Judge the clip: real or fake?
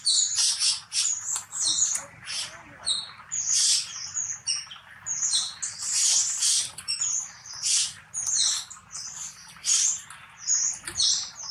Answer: real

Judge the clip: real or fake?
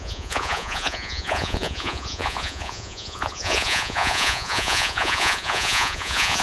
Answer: fake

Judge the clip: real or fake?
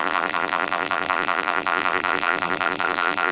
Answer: fake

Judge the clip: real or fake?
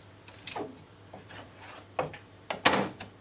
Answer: real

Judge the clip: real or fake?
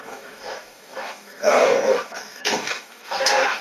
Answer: fake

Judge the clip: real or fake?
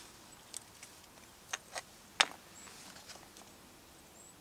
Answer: real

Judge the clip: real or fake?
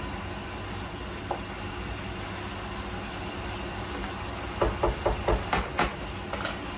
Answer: real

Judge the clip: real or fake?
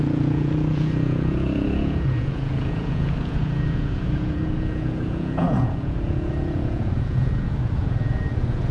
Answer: fake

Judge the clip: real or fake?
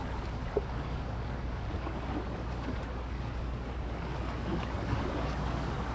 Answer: fake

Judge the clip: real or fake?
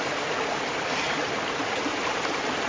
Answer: fake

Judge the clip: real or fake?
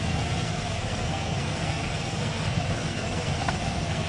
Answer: fake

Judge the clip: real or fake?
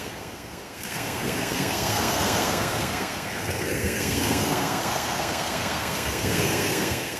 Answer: fake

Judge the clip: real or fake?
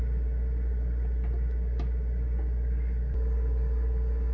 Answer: real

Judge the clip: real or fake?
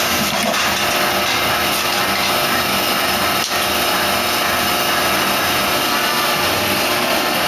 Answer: real